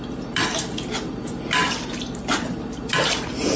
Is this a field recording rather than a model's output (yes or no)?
yes